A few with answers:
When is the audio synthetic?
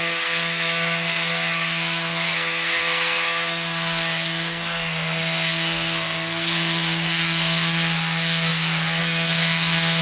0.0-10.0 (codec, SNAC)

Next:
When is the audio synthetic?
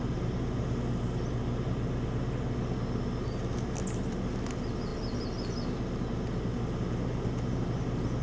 none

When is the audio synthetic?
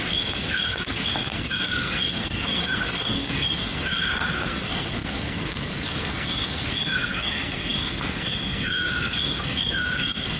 0.0-10.4 (codec, SNAC)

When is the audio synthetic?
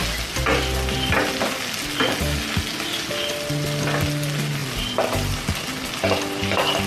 none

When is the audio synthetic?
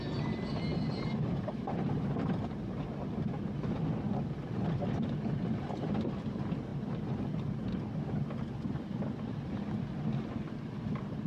0.7-2.0 (vocoder, BigVGAN v2)